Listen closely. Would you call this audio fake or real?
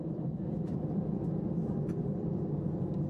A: real